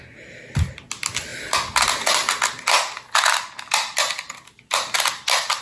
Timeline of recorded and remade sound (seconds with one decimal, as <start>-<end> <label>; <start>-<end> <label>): 0.0-5.6 recorded

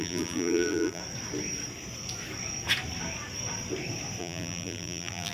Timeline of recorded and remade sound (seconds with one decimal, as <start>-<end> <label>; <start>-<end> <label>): 0.0-1.0 remade; 1.0-4.2 recorded; 4.2-5.3 remade

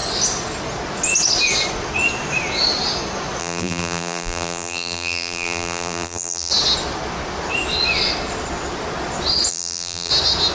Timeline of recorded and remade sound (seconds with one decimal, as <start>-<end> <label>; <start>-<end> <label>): 0.0-3.4 recorded; 3.4-6.5 remade; 6.5-9.5 recorded; 9.5-10.1 remade; 10.1-10.5 recorded

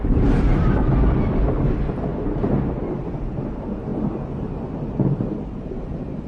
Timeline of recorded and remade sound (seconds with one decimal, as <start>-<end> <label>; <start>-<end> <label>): 0.0-0.5 remade; 0.5-3.3 recorded; 3.3-3.9 remade; 3.9-4.9 recorded; 4.9-6.3 remade

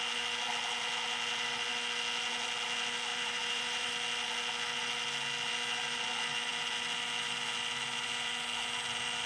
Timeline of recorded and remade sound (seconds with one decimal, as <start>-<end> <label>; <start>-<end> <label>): 0.0-3.1 recorded; 3.1-3.9 remade; 3.9-9.3 recorded